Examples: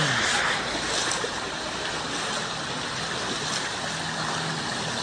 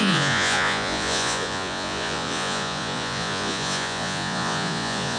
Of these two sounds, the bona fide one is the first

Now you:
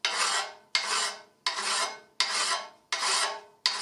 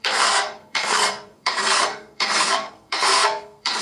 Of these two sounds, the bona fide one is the first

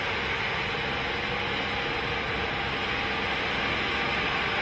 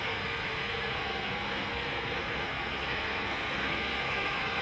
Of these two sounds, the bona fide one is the first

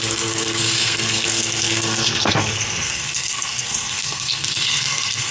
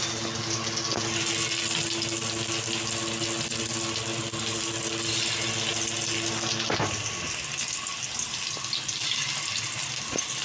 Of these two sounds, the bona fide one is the second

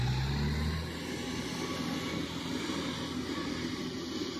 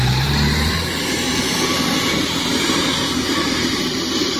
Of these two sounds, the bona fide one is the first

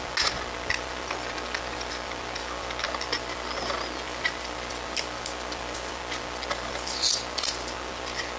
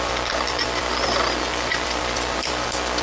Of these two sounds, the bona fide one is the first